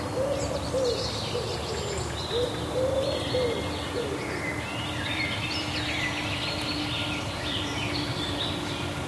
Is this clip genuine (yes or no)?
yes